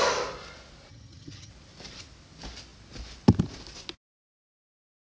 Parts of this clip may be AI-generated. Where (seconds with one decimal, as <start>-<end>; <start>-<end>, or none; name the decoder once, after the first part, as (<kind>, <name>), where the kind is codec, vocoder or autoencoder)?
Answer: 0.9-1.5 (vocoder, HiFi-GAN)